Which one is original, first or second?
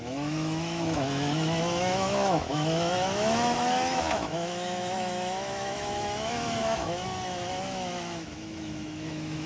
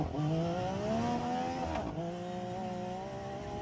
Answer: second